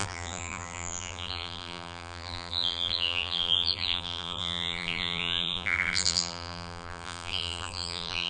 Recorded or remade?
remade